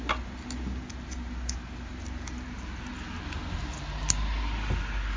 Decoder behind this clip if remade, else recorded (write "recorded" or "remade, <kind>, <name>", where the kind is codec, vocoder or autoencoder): recorded